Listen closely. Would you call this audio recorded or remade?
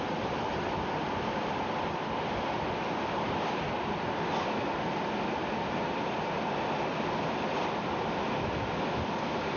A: recorded